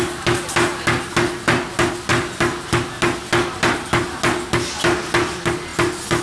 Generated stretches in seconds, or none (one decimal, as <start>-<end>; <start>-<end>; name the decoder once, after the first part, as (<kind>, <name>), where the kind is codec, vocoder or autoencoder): none